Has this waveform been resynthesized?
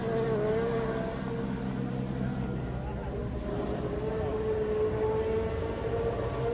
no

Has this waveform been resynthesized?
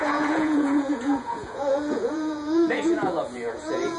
yes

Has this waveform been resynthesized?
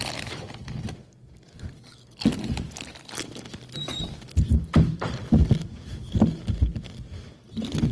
no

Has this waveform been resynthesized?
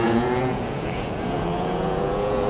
yes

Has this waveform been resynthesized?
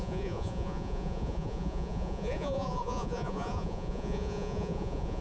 yes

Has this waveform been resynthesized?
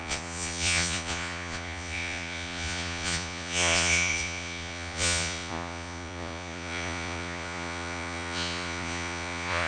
yes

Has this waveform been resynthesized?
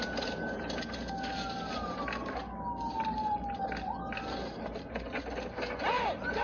no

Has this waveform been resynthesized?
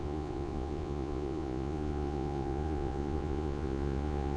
yes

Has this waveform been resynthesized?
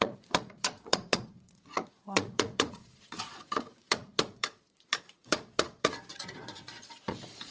yes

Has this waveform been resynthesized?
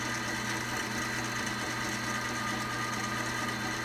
no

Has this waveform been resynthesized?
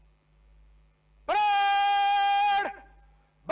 no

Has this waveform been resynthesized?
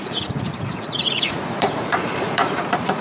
yes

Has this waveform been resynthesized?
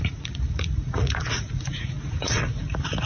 yes